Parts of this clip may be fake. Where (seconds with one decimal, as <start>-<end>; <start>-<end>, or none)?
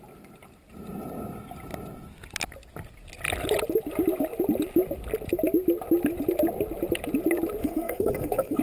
7.6-8.6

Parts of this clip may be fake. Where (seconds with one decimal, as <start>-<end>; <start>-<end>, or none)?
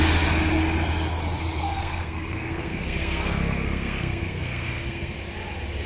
1.6-5.1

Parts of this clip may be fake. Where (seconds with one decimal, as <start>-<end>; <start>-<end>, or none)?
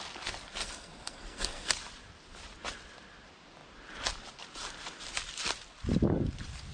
0.6-1.7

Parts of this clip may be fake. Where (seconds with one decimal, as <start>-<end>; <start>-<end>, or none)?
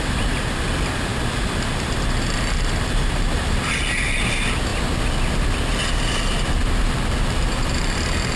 none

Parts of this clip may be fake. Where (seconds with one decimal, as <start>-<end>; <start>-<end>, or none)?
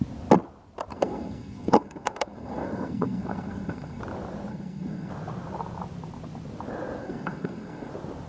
0.9-4.0; 4.5-5.1; 7.0-7.9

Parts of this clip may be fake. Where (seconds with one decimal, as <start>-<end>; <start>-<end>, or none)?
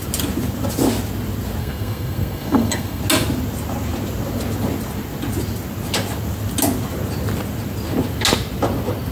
1.6-3.0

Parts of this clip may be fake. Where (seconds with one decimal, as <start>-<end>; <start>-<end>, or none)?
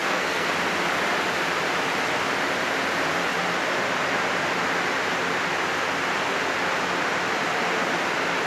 0.0-0.5